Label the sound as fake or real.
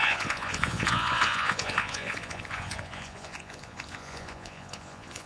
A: fake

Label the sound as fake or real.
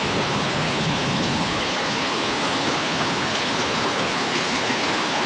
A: fake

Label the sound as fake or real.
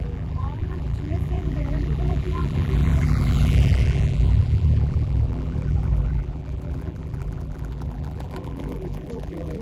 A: fake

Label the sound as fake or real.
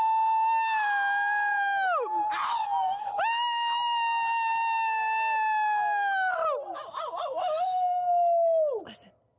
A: real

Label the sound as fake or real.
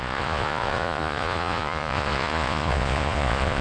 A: fake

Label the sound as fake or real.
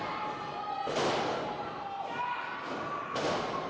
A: real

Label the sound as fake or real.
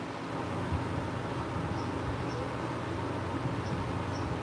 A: real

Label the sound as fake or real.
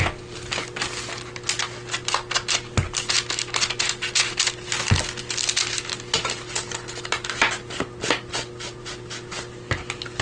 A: real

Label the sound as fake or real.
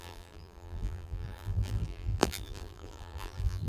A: fake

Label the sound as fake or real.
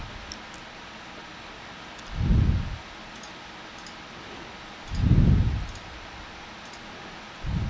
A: real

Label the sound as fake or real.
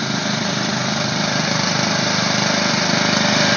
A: fake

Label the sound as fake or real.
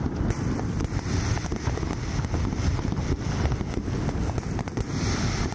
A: real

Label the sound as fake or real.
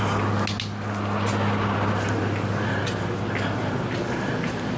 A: real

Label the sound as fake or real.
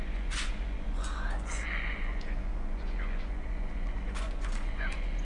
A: fake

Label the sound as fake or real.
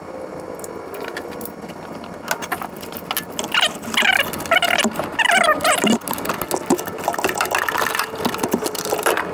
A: real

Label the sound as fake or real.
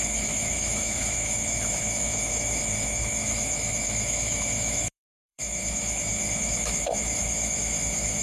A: fake